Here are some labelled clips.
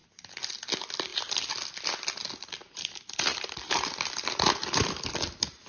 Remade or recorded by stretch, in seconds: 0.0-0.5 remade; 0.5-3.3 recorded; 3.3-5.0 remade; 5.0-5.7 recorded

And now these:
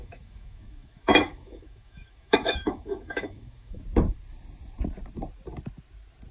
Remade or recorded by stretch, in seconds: 0.0-3.8 remade; 3.8-6.3 recorded

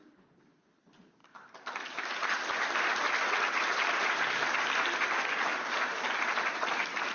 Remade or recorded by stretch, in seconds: 0.0-7.1 recorded

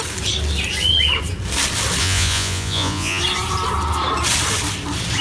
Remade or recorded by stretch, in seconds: 0.0-2.0 recorded; 2.0-3.2 remade; 3.2-5.2 recorded

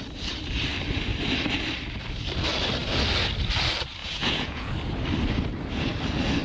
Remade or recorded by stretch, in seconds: 0.0-4.0 recorded; 4.0-4.7 remade; 4.7-6.4 recorded

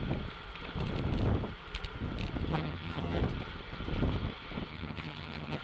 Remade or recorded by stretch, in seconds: 0.0-2.5 recorded; 2.5-3.2 remade; 3.2-4.7 recorded; 4.7-5.6 remade

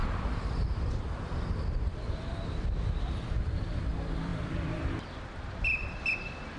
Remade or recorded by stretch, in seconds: 0.0-6.6 remade

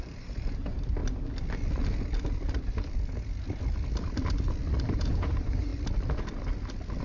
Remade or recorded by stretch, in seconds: 0.0-1.0 remade; 1.0-4.8 recorded; 4.8-5.7 remade; 5.7-7.0 recorded